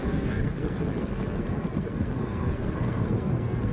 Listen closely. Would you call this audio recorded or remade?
remade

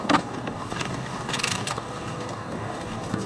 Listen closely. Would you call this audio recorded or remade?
remade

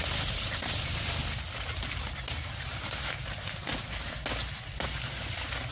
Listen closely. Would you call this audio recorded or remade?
recorded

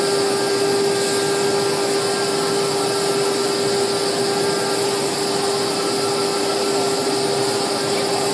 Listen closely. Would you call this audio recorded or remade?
recorded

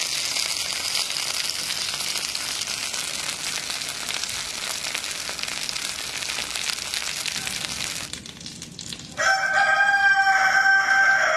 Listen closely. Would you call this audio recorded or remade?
recorded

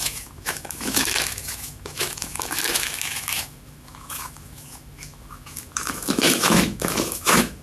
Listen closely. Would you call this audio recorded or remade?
remade